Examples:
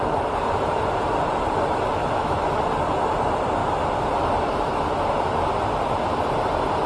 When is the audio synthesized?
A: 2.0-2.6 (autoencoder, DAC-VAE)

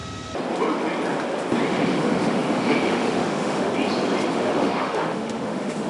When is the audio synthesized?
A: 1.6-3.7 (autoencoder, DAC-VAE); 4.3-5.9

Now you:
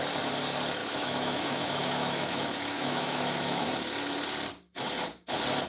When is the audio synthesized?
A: 0.8-3.7 (autoencoder, DAC-VAE)